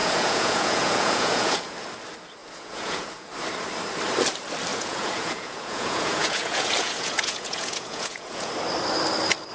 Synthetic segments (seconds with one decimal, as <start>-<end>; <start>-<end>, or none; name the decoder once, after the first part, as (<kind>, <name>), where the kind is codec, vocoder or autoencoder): 0.0-1.8 (vocoder, Vocos); 2.4-3.3; 4.7-8.5